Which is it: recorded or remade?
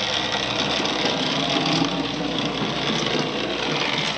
recorded